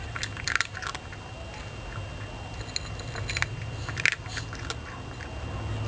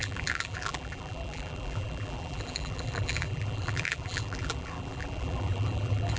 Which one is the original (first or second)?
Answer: first